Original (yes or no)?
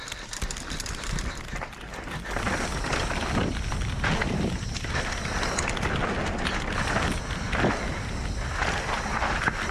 yes